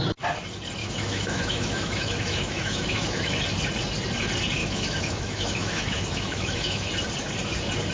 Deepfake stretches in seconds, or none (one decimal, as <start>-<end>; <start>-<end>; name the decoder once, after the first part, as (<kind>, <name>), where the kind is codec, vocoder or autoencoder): 0.8-3.4 (autoencoder, DAC-VAE); 4.6-6.9